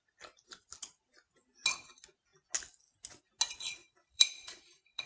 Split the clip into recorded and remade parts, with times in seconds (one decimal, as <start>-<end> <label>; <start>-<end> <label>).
0.0-3.8 recorded; 3.8-5.1 remade